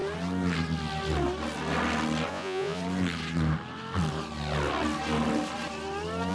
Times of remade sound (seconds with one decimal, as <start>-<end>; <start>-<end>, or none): 2.3-2.8